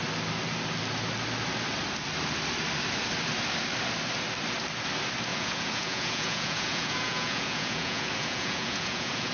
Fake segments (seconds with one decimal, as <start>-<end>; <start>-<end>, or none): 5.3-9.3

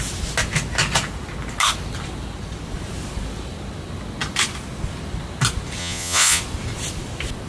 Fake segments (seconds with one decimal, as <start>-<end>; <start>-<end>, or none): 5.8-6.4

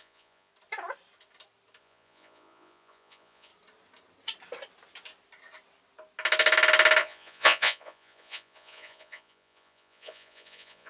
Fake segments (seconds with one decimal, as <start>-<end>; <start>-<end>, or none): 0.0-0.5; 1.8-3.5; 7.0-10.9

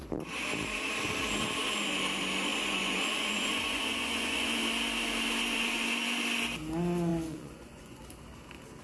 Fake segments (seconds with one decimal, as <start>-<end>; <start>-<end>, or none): 2.5-4.6; 7.1-8.0

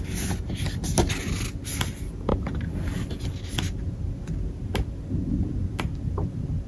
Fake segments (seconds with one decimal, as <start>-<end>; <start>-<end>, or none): none